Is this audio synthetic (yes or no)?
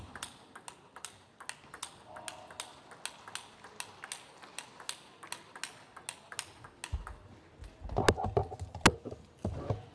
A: no